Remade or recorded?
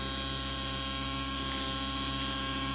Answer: recorded